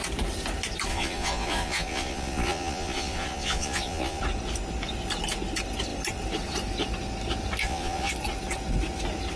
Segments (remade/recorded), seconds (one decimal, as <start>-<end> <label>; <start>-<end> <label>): 0.0-0.9 recorded; 0.9-4.2 remade; 4.2-7.6 recorded; 7.6-8.1 remade; 8.1-9.4 recorded